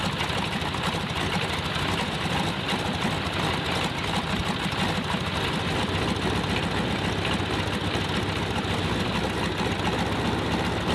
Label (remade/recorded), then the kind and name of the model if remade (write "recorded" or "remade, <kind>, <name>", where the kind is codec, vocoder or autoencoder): recorded